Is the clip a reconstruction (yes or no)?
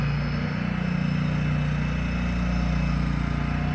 no